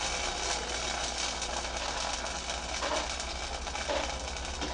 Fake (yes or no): no